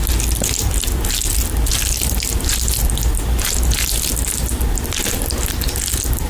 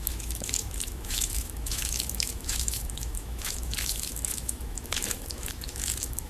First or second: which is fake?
second